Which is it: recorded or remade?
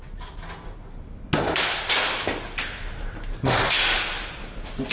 recorded